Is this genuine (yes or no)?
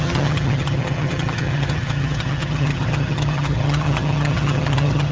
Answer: no